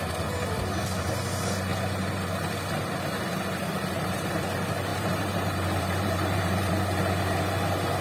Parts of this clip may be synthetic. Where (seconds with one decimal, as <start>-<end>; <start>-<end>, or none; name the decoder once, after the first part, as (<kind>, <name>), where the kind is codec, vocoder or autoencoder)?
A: 1.7-2.3 (vocoder, BigVGAN v2); 3.6-4.3; 4.9-6.7